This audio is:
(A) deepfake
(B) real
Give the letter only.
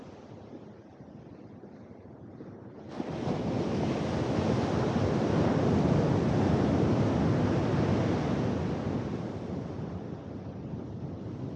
B